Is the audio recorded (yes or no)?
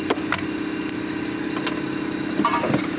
yes